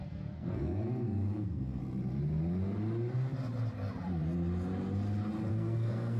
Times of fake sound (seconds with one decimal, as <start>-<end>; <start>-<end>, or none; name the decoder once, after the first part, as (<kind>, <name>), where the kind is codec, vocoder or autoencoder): 0.0-1.8 (codec, SNAC); 5.5-6.2